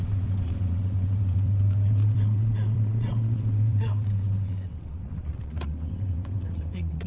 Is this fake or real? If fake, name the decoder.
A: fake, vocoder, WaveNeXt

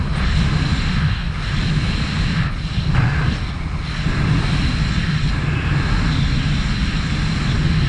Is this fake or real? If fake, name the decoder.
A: real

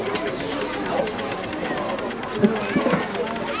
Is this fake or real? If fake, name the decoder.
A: real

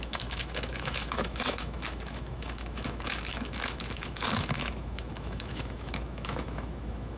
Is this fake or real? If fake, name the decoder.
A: fake, autoencoder, DAC-VAE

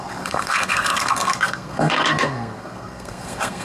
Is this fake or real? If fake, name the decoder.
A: fake, codec, SNAC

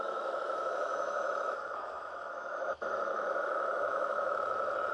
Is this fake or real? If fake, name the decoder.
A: fake, autoencoder, DAC-VAE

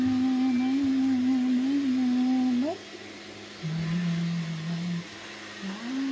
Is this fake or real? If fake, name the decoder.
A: real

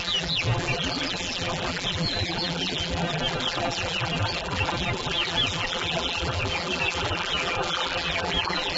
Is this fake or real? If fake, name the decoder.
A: fake, vocoder, BigVGAN v2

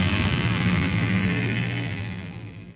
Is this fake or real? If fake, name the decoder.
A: fake, vocoder, BigVGAN v2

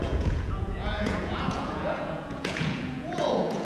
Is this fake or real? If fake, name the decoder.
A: fake, vocoder, Vocos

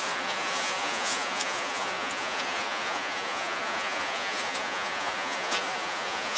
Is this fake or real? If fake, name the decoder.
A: fake, vocoder, Vocos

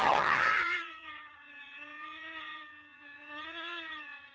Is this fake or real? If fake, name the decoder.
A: fake, vocoder, HiFi-GAN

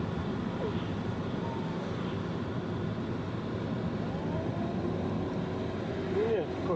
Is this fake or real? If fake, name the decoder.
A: real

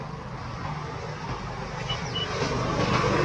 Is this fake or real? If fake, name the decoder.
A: real